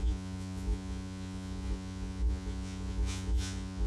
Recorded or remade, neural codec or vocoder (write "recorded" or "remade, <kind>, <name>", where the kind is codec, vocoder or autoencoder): remade, vocoder, Vocos